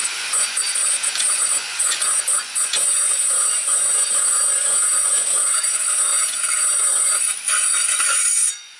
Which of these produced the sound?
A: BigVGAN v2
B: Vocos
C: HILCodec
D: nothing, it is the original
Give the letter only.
B